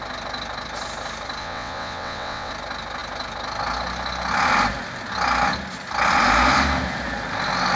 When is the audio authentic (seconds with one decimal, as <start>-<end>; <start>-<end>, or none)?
0.0-1.4; 2.5-7.8